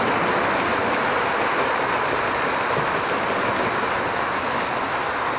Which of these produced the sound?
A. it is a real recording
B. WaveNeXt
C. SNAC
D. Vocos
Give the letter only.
A